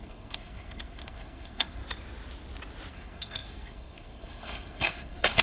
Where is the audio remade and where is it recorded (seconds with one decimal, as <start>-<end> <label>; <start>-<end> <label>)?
0.0-1.8 remade; 1.8-2.9 recorded; 2.9-5.4 remade